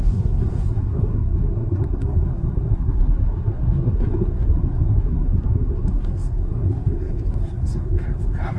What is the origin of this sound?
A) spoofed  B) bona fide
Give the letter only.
A